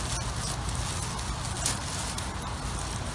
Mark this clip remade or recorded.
recorded